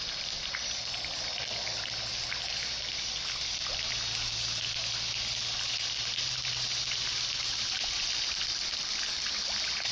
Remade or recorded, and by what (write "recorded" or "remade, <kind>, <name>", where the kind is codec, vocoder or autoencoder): recorded